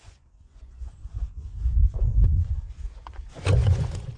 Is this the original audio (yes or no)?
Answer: no